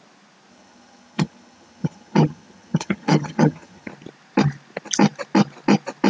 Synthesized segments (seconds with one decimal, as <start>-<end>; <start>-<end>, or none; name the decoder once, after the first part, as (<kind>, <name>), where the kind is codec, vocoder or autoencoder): 0.5-3.9 (vocoder, HiFi-GAN)